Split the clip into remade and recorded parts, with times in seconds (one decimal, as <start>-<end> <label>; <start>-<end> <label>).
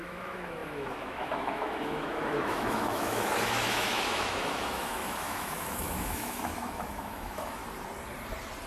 0.0-7.6 remade; 7.6-8.7 recorded